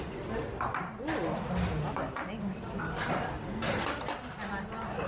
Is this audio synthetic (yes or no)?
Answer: no